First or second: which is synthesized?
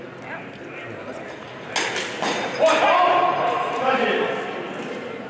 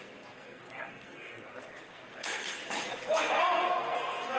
second